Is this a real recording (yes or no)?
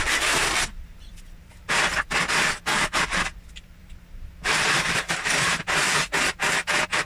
no